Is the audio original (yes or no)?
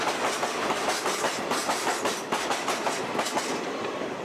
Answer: yes